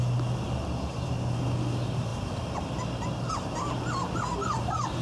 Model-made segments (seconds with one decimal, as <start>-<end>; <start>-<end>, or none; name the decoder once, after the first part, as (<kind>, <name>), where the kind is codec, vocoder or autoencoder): none